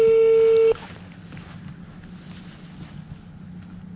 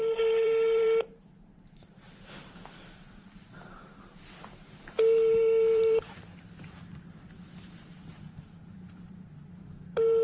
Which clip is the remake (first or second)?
second